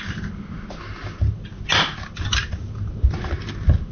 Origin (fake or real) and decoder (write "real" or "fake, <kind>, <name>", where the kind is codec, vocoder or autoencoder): real